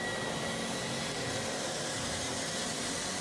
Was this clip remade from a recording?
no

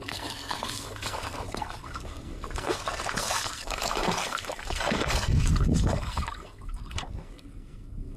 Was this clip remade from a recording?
yes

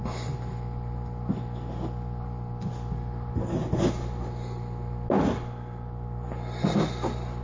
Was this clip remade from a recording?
no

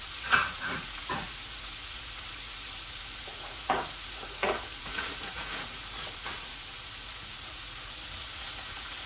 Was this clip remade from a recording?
yes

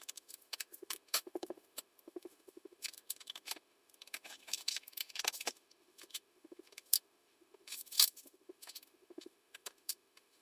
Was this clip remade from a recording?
yes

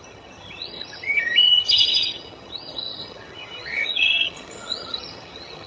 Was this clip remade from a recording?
yes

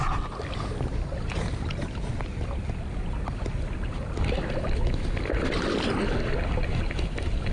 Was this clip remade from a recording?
no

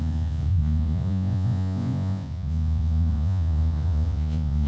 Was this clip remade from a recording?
yes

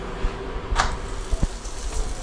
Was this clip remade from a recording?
no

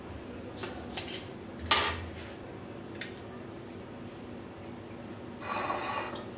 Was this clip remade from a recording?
no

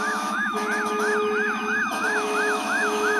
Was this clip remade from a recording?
yes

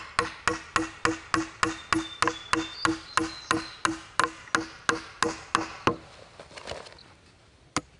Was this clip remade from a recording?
no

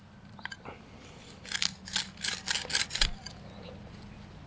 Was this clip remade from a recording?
no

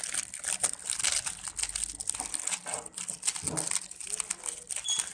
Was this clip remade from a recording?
no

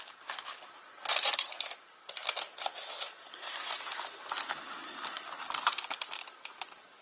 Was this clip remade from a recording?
yes